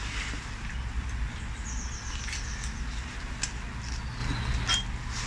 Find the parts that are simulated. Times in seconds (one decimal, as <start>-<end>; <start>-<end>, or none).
none